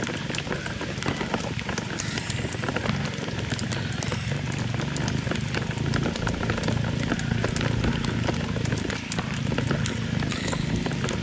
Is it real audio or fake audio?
real